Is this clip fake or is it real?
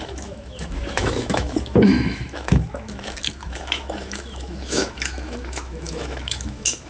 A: fake